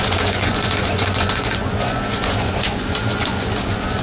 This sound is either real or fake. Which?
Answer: fake